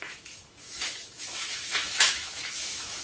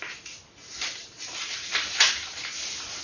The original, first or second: second